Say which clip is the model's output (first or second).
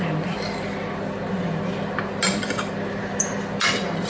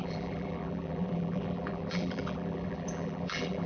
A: second